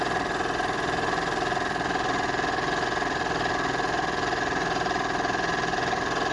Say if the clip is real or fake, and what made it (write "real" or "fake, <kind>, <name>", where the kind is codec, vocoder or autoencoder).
real